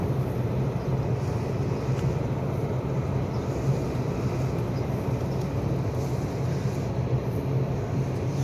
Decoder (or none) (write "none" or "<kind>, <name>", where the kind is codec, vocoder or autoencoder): none